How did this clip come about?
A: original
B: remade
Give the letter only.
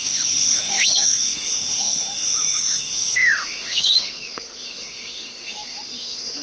B